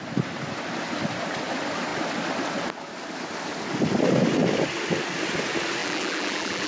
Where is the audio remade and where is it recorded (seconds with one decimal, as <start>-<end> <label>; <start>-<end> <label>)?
0.0-5.8 recorded; 5.8-6.7 remade